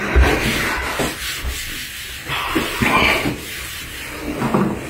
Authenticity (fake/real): real